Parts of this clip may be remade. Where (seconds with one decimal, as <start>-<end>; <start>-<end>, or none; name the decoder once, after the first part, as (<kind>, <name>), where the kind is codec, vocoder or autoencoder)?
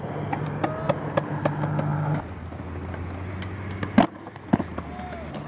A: none